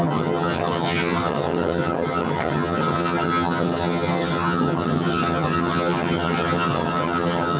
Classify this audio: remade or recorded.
remade